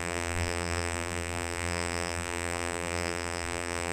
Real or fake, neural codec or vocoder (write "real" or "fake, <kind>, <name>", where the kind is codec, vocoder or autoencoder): fake, vocoder, BigVGAN v2